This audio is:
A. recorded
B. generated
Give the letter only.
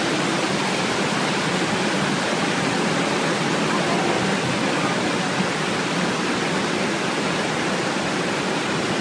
A